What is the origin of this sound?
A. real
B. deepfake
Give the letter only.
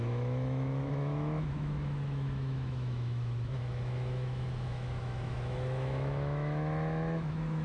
B